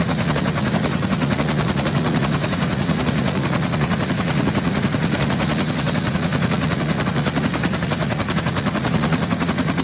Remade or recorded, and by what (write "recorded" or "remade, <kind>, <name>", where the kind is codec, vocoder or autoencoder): remade, vocoder, Vocos